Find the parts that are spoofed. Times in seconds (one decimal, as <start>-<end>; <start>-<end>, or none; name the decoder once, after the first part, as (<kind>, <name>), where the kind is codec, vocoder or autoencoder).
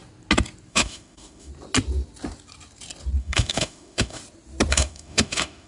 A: 0.7-1.5 (autoencoder, DAC-VAE); 3.2-4.2; 4.7-5.7